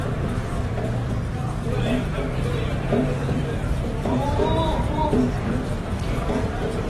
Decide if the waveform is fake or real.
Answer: fake